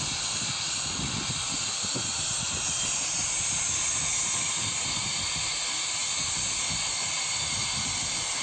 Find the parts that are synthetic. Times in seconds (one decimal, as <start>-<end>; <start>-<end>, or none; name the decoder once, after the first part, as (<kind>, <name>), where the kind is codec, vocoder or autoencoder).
none